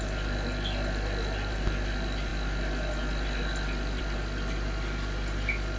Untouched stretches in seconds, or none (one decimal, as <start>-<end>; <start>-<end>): 0.0-5.8